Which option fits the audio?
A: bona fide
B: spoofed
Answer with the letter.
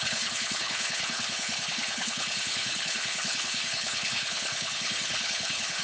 B